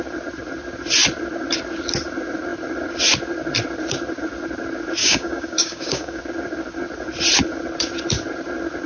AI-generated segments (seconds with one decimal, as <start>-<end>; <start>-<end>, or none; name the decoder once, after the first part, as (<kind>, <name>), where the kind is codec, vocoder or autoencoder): 5.0-6.2 (codec, DAC)